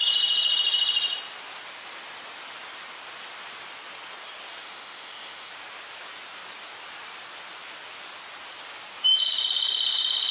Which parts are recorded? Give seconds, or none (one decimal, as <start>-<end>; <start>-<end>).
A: 0.0-4.6; 5.5-10.3